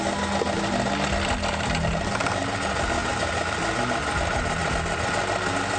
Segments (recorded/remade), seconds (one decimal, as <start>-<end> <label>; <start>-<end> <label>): 0.0-5.8 recorded